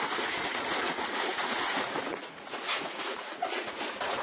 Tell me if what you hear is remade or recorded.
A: remade